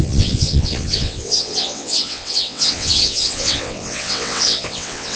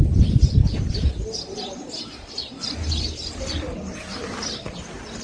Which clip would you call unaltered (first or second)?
second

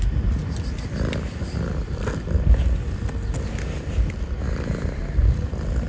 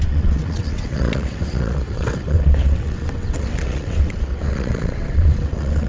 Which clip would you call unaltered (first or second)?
first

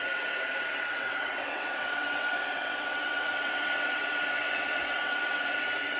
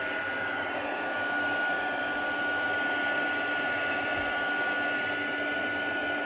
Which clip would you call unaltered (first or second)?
second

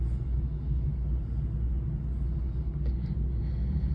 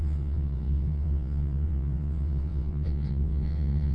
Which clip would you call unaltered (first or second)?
first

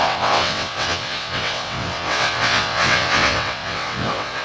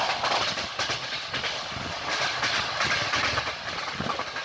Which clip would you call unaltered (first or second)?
second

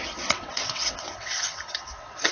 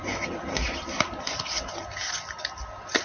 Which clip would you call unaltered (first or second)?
second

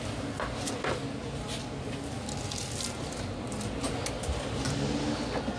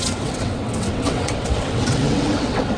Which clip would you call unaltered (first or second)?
first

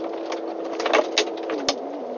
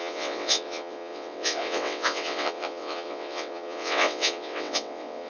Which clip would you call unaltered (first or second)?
first